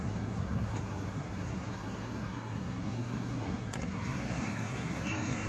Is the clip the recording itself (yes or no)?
no